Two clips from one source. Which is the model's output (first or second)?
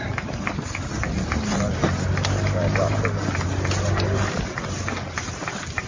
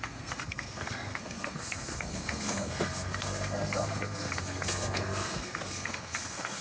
second